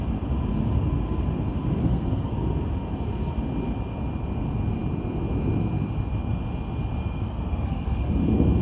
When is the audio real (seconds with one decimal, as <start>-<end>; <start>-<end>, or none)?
0.0-1.8; 2.3-7.0; 8.1-8.6